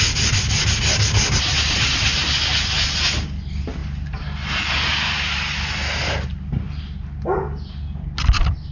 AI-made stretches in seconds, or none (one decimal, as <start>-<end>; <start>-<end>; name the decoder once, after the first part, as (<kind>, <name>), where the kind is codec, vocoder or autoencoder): none